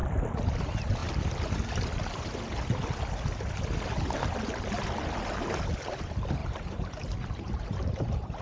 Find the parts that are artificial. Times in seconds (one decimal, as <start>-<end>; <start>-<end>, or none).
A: 6.4-8.4